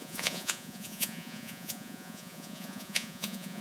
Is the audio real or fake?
fake